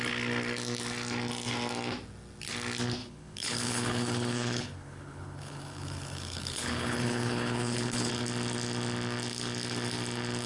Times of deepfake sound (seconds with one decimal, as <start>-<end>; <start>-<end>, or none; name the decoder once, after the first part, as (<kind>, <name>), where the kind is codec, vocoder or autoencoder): 3.0-8.1 (codec, HILCodec)